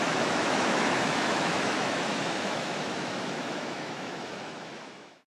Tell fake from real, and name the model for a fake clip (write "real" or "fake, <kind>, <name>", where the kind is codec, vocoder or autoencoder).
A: fake, autoencoder, DAC-VAE